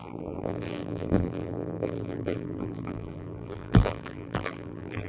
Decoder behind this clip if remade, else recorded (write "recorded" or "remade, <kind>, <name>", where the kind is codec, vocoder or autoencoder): remade, vocoder, BigVGAN v2